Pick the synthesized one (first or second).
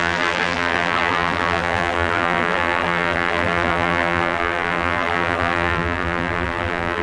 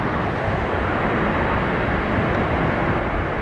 first